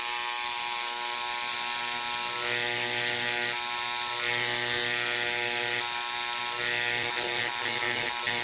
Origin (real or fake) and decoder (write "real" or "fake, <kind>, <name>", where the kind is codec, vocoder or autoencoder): real